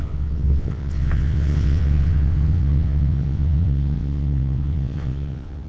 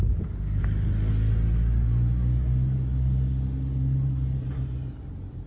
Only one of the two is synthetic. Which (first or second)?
first